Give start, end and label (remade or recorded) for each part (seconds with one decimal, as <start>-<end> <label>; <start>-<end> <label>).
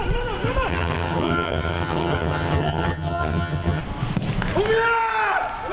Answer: 0.0-0.7 recorded; 0.7-3.8 remade; 3.8-5.7 recorded